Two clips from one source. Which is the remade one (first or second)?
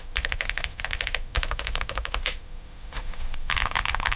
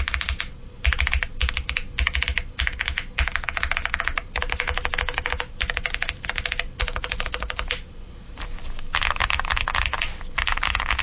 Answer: first